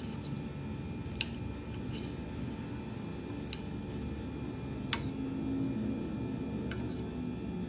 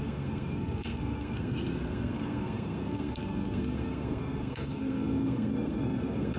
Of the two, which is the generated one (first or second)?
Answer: second